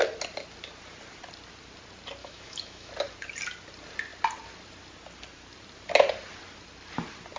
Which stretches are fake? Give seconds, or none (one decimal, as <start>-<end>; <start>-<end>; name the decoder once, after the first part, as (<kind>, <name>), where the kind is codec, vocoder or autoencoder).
2.2-2.9 (autoencoder, DAC-VAE)